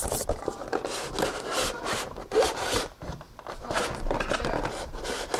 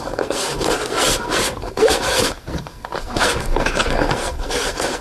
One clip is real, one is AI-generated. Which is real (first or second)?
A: first